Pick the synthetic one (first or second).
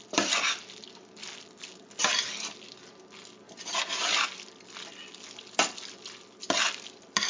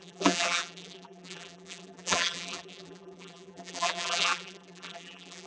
second